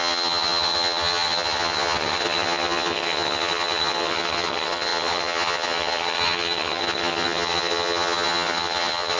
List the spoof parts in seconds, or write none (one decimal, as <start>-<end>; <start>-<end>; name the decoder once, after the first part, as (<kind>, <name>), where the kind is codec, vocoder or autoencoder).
0.0-9.2 (vocoder, HiFi-GAN)